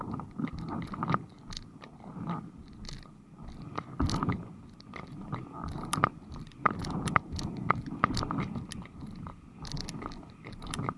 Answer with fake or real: real